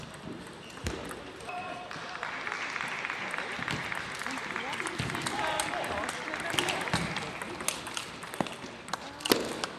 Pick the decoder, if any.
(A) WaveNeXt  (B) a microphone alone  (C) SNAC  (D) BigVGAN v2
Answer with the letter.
B